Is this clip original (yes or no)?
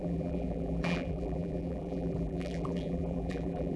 no